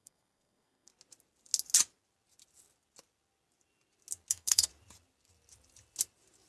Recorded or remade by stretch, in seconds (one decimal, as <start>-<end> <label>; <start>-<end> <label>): 0.0-0.9 remade; 0.9-4.3 recorded; 4.3-4.7 remade; 4.7-6.5 recorded